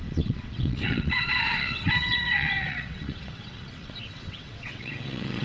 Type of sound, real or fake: fake